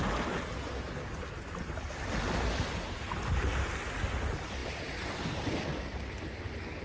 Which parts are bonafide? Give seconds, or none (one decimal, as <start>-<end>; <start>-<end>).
0.0-6.8

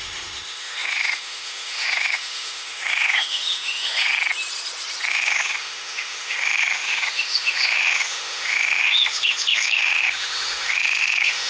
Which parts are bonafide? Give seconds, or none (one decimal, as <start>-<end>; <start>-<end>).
4.1-5.1